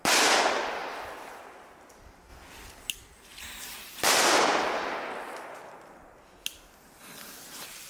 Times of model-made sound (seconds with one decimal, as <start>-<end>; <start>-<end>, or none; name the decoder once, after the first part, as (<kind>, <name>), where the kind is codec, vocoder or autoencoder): 0.8-1.7 (vocoder, BigVGAN v2); 2.3-2.9; 3.3-4.6